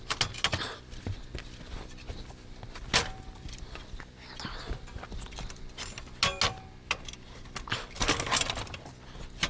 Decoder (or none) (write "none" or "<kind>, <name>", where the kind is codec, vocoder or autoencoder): none